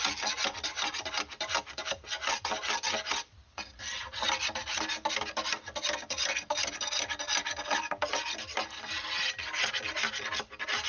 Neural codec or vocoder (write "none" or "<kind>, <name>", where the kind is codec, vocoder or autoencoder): none